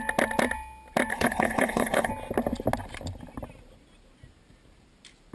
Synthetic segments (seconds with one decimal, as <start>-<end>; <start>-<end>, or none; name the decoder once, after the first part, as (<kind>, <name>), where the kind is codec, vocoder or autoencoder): 1.1-2.1 (codec, HILCodec)